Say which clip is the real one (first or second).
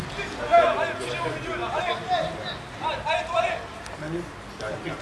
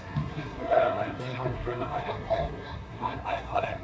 first